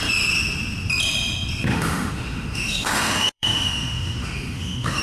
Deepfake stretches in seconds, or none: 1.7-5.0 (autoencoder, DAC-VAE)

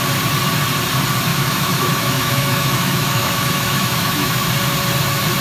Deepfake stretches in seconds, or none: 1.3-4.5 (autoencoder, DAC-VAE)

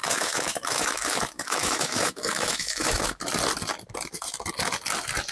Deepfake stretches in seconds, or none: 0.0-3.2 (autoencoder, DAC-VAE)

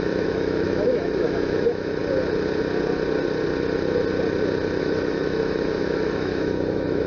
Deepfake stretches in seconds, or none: 0.0-2.0 (autoencoder, DAC-VAE); 4.8-7.1

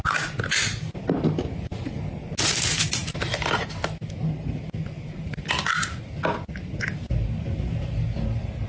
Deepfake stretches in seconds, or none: none

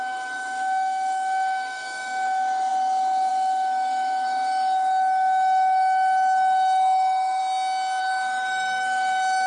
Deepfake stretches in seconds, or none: 0.0-7.4 (autoencoder, DAC-VAE); 8.0-9.5

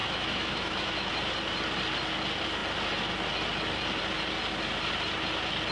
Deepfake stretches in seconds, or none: 0.0-1.1 (autoencoder, DAC-VAE)

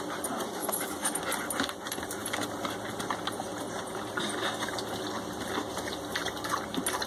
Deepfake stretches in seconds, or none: 0.6-1.2 (autoencoder, DAC-VAE)